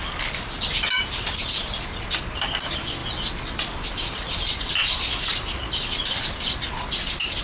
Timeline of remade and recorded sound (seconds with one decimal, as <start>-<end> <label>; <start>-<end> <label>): 0.0-7.4 recorded